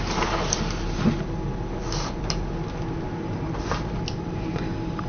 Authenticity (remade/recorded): recorded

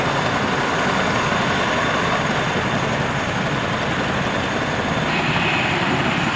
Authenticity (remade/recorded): recorded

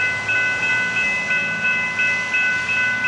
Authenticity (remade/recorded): recorded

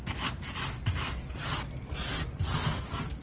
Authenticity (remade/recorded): recorded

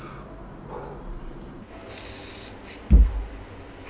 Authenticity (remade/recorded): recorded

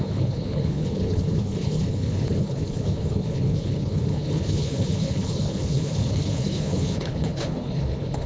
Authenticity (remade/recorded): remade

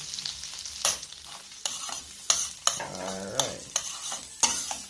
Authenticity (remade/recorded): recorded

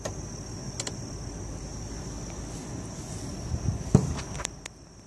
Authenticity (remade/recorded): recorded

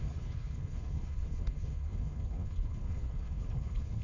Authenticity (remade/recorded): remade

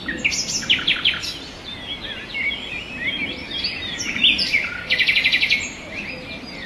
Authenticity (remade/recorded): recorded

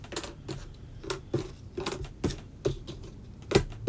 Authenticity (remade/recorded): recorded